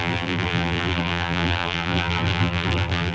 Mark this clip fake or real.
fake